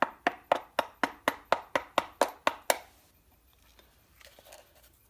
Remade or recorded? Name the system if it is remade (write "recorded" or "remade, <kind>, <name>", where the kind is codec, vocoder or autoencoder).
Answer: recorded